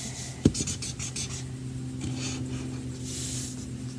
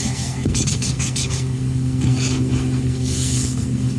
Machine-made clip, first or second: second